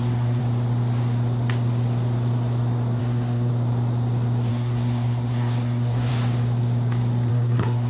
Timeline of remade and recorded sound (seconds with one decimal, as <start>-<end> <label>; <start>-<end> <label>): 0.0-0.4 remade; 0.4-3.0 recorded; 3.0-3.5 remade; 3.5-4.5 recorded; 4.5-6.1 remade; 6.1-7.3 recorded; 7.3-7.9 remade